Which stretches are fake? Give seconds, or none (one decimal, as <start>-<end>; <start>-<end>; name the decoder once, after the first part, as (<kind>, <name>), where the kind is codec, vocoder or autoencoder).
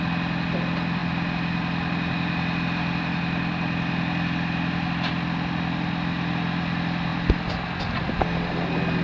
none